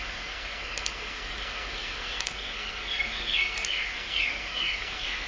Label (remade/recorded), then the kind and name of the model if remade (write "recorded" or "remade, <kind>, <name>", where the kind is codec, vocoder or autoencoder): remade, codec, SNAC